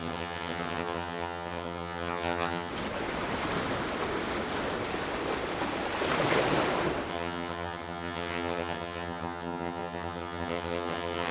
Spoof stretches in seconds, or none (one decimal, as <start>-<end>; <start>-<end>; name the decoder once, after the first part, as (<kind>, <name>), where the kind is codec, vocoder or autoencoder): 0.0-2.7 (vocoder, HiFi-GAN); 7.1-11.3